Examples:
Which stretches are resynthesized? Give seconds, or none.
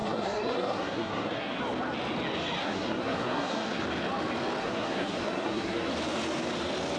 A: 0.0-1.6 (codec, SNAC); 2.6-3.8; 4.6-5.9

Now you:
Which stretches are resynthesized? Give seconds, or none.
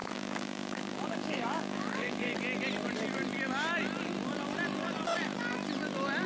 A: 0.0-2.3 (codec, DAC)